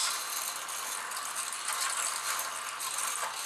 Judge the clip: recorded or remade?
recorded